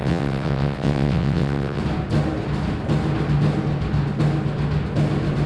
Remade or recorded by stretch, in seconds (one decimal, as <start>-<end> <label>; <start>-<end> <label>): 0.0-1.8 remade; 1.8-5.5 recorded